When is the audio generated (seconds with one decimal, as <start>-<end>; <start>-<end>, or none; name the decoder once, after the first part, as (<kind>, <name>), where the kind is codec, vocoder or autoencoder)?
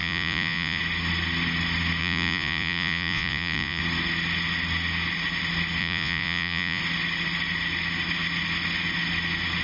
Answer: 0.0-0.8 (vocoder, Vocos); 2.0-3.8; 5.8-6.8